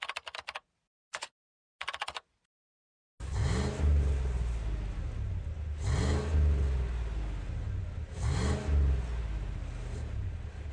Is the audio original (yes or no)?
yes